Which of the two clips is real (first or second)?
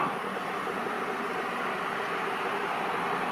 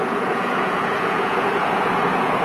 first